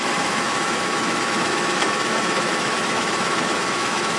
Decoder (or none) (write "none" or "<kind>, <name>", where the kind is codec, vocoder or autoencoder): autoencoder, DAC-VAE